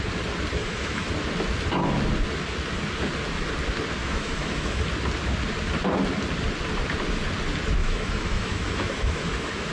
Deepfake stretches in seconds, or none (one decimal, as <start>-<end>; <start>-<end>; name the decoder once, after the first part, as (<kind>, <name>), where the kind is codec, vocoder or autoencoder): 0.6-1.1 (autoencoder, DAC-VAE); 4.0-4.8; 7.8-9.7